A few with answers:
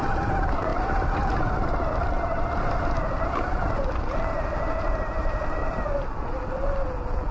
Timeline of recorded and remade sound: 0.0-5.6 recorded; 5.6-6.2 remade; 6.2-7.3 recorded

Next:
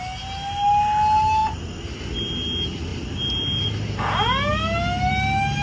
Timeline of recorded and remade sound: 0.0-5.6 recorded

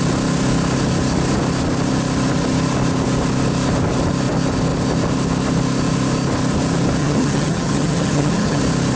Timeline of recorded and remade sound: 0.0-7.0 recorded; 7.0-8.6 remade; 8.6-9.0 recorded